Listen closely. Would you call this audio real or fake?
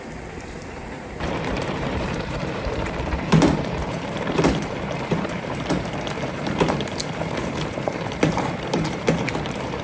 fake